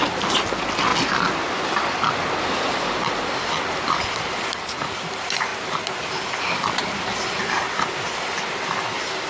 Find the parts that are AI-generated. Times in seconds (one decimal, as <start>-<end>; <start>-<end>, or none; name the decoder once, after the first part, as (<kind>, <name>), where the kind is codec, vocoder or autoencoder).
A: none